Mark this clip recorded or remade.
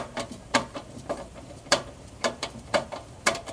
remade